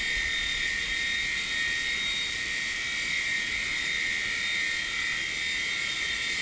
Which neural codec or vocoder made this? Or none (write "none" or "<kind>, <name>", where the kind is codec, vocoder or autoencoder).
none